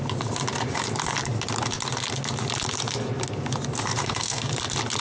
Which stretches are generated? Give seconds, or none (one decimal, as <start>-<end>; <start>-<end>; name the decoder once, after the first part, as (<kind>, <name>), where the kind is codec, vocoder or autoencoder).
4.0-4.5 (codec, SNAC)